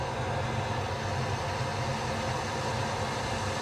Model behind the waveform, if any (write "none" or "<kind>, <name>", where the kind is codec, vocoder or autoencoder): none